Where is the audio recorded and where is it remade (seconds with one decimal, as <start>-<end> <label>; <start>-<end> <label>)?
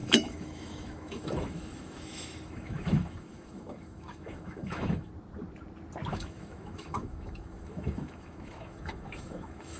0.0-5.1 remade; 5.1-6.1 recorded; 6.1-9.8 remade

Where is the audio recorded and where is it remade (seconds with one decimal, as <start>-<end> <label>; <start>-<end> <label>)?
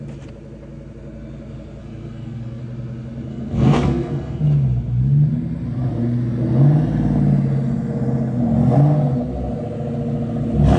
0.0-1.8 recorded; 1.8-2.6 remade; 2.6-3.3 recorded; 3.3-4.4 remade; 4.4-10.8 recorded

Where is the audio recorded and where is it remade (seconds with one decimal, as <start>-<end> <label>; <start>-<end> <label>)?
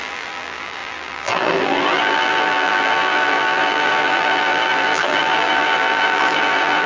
0.0-6.9 remade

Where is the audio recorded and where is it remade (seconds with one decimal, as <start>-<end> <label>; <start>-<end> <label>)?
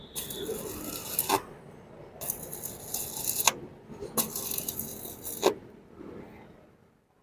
0.0-7.2 recorded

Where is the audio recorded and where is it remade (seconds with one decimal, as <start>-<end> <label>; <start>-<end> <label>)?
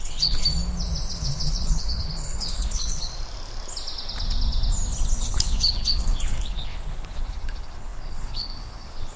0.0-0.4 remade; 0.4-1.1 recorded; 1.1-3.1 remade; 3.1-5.2 recorded; 5.2-9.2 remade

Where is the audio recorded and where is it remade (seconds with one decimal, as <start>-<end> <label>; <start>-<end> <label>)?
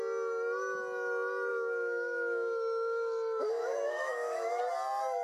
0.0-1.5 recorded; 1.5-4.6 remade; 4.6-5.2 recorded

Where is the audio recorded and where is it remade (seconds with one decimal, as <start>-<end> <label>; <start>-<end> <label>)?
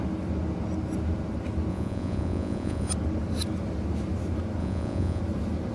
0.0-1.7 recorded; 1.7-2.9 remade; 2.9-4.6 recorded; 4.6-5.2 remade; 5.2-5.7 recorded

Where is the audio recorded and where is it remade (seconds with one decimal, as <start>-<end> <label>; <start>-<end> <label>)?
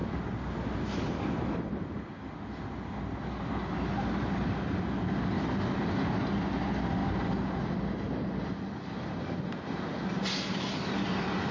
0.0-11.5 recorded